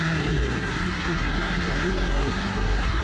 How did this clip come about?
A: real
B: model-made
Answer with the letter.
B